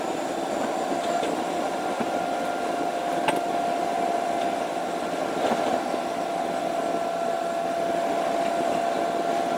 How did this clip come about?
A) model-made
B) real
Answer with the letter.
B